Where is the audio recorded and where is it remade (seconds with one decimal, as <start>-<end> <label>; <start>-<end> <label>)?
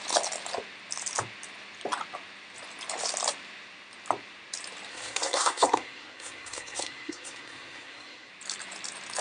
0.0-4.9 recorded; 4.9-8.3 remade; 8.3-9.2 recorded